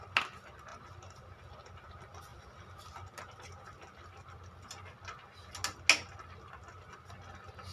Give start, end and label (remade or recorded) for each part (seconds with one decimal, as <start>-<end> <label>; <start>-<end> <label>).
0.0-7.7 recorded